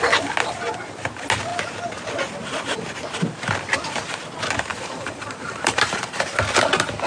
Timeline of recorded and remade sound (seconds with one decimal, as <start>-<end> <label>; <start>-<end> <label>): 0.0-4.7 recorded; 4.7-6.3 remade; 6.3-7.1 recorded

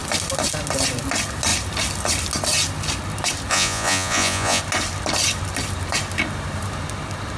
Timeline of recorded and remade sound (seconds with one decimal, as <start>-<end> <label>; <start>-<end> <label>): 0.0-3.5 recorded; 3.5-4.6 remade; 4.6-7.4 recorded

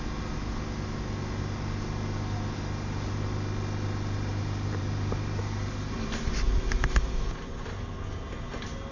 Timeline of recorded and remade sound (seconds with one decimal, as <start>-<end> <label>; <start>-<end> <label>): 0.0-4.3 recorded; 4.3-5.4 remade; 5.4-8.9 recorded